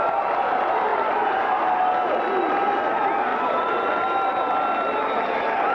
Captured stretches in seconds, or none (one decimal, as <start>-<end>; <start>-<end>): 0.0-0.9; 1.5-3.3; 4.0-5.7